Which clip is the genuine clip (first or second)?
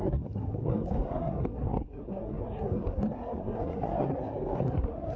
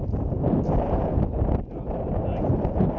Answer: second